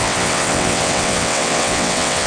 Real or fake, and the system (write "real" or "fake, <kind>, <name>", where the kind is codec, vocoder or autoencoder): fake, vocoder, WaveNeXt